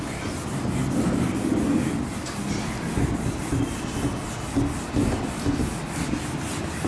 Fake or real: real